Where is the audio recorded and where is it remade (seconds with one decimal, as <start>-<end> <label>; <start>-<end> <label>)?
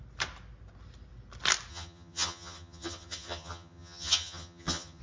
0.0-1.7 recorded; 1.7-5.0 remade